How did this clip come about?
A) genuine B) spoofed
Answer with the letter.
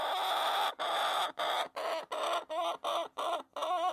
A